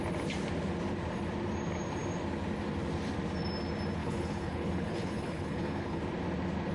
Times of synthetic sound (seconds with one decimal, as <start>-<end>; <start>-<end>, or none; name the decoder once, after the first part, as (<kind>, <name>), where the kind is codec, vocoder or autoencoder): 4.0-6.0 (codec, HILCodec)